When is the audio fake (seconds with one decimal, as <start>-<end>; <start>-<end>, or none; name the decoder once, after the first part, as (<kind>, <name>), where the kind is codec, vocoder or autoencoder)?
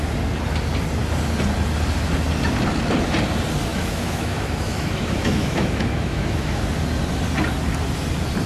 3.7-6.6 (autoencoder, DAC-VAE)